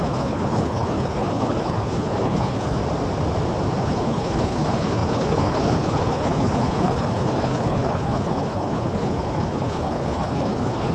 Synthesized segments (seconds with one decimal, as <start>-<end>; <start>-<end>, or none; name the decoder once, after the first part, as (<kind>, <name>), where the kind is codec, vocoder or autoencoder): 0.0-2.8 (codec, HILCodec); 3.8-10.9